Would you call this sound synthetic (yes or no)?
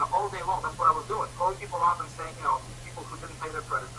yes